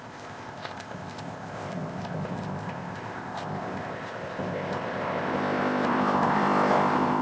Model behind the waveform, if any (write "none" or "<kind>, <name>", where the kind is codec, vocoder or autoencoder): codec, ZipCodec